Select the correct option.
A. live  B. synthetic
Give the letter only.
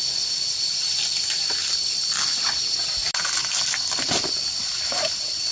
A